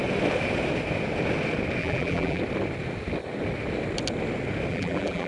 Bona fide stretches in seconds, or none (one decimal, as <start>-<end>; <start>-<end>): 0.0-1.8; 2.4-4.7

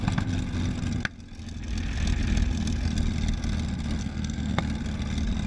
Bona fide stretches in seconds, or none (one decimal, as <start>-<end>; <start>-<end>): 0.0-4.0; 4.6-5.5

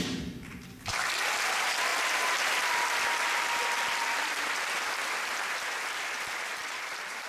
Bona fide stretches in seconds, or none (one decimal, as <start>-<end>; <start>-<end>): 0.0-0.5; 1.2-1.9; 2.6-6.6

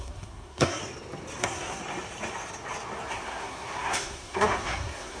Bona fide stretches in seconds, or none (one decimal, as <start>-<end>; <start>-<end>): 0.8-1.4; 1.8-3.1

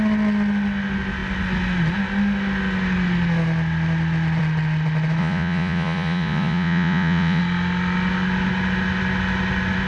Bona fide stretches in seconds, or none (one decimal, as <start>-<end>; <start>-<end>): 0.0-5.2; 7.4-9.9

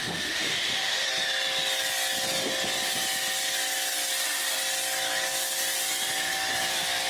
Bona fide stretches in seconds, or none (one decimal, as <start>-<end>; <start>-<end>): 1.1-7.1

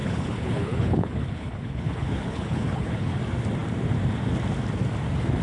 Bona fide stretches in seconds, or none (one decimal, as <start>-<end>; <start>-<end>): 3.2-5.4